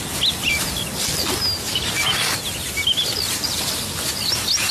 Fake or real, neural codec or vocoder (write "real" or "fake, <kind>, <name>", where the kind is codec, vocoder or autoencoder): real